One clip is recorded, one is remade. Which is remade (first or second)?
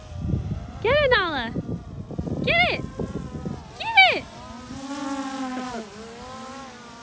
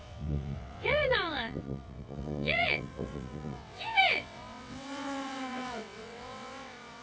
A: second